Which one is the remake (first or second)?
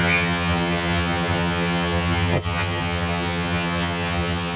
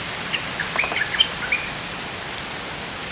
first